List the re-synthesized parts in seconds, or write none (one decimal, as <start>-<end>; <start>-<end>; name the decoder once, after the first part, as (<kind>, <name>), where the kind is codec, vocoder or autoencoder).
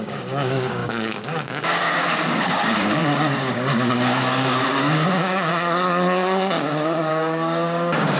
0.0-5.5 (codec, DAC); 7.1-8.2